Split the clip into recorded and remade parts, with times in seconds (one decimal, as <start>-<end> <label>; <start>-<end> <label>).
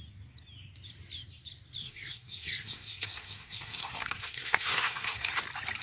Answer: 0.0-1.8 recorded; 1.8-5.3 remade; 5.3-5.8 recorded